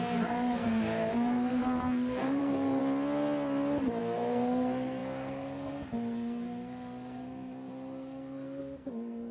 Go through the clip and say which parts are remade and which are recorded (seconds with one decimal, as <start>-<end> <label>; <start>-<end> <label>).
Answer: 0.0-2.8 remade; 2.8-4.0 recorded; 4.0-9.3 remade